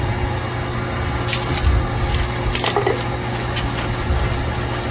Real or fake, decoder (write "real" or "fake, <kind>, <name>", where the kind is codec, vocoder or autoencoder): real